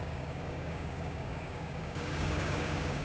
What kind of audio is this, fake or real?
fake